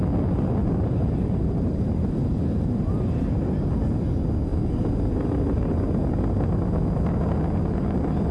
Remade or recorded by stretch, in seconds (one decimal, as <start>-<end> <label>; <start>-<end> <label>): 0.0-0.6 recorded; 0.6-3.6 remade; 3.6-8.3 recorded